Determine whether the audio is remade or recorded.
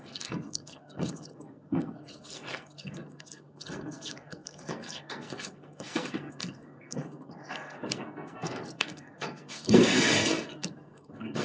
remade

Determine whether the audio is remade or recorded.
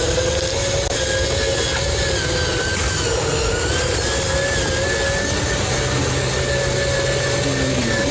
recorded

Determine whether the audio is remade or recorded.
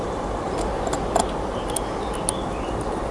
recorded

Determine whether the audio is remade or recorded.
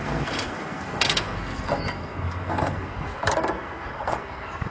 remade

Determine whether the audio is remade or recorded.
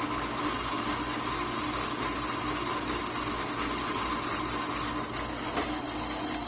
recorded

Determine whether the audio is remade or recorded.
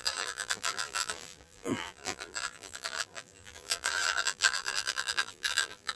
remade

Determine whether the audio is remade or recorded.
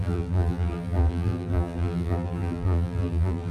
remade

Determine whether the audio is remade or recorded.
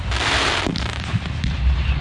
remade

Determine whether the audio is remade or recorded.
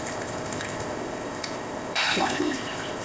remade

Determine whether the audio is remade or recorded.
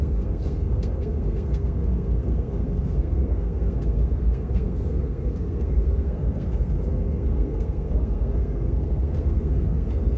remade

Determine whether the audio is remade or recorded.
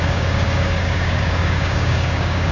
remade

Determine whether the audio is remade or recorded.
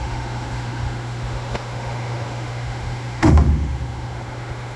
remade